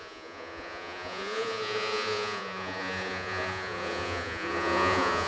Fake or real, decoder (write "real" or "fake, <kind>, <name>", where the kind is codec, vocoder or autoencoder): fake, vocoder, Vocos